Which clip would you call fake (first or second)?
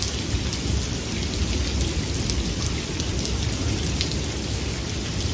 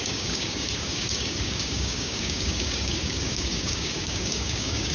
second